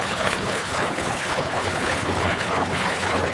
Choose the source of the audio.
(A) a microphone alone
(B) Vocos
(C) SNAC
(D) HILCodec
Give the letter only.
D